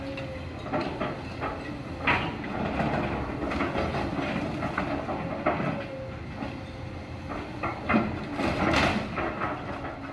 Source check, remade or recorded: recorded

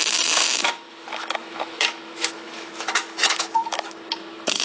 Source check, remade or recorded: remade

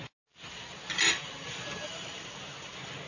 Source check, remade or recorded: recorded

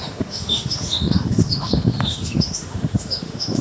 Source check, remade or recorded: remade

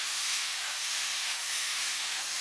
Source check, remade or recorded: remade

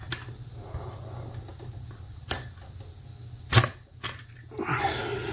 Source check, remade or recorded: recorded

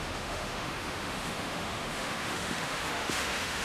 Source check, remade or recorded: remade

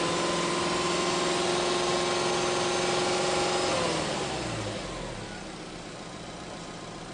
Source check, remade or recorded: recorded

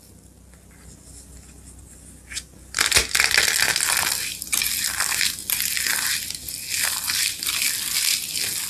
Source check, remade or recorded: recorded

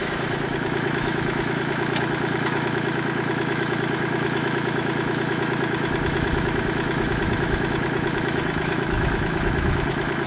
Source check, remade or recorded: remade